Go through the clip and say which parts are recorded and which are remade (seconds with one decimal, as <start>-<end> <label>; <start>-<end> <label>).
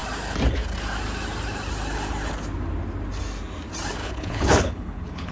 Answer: 0.0-4.0 recorded; 4.0-5.3 remade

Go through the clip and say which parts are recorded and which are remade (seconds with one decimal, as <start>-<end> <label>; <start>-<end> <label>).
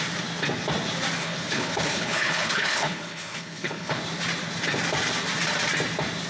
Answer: 0.0-1.2 recorded; 1.2-4.0 remade; 4.0-6.3 recorded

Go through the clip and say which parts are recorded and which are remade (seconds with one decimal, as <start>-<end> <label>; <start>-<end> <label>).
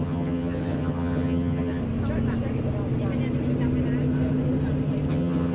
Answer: 0.0-1.8 remade; 1.8-5.1 recorded; 5.1-5.5 remade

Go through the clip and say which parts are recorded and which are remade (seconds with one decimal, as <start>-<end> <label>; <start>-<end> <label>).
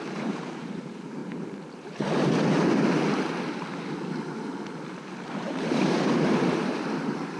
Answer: 0.0-1.2 remade; 1.2-5.4 recorded; 5.4-7.4 remade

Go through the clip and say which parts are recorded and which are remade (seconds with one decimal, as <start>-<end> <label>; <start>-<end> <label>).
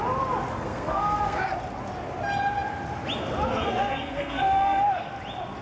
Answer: 0.0-0.5 recorded; 0.5-1.4 remade; 1.4-3.5 recorded; 3.5-5.1 remade; 5.1-5.6 recorded